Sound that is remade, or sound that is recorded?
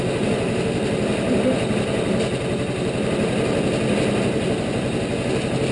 recorded